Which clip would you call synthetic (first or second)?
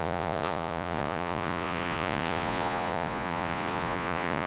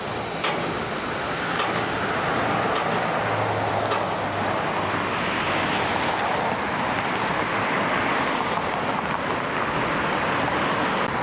first